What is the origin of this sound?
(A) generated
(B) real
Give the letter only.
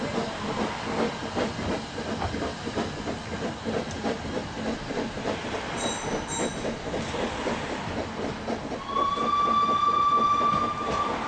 B